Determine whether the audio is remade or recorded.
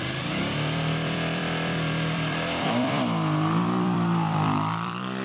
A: remade